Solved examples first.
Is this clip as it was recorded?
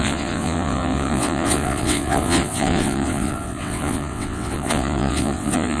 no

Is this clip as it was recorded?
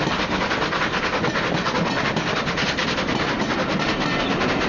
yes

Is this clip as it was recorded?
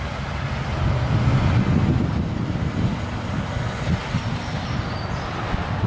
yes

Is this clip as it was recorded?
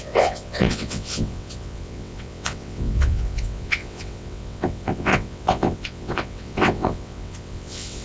no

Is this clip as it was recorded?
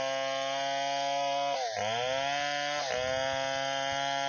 yes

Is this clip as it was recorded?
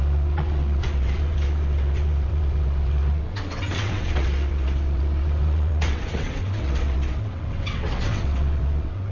no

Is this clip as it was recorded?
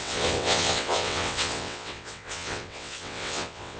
no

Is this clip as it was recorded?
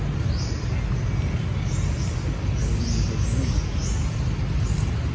yes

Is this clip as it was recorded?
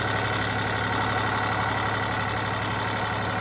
yes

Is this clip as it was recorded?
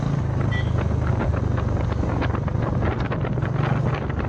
yes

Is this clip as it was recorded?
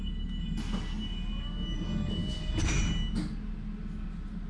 yes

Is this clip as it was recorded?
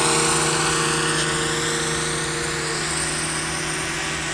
yes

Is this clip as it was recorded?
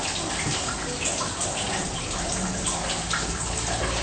yes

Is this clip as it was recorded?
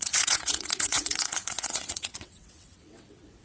no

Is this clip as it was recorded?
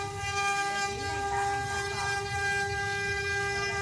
yes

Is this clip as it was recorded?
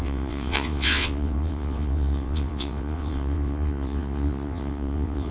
no